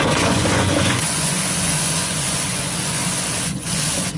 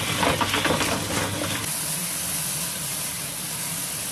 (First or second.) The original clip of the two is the second